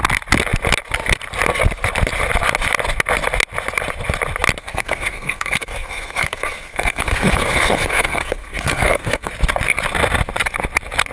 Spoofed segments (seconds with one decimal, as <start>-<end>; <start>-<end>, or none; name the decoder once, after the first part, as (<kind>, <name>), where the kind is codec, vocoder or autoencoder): 4.6-9.3 (codec, SNAC)